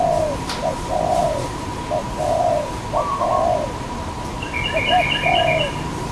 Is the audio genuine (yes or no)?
yes